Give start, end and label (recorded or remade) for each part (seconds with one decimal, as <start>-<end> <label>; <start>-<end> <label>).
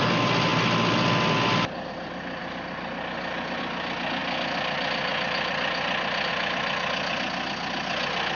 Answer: 0.0-8.3 recorded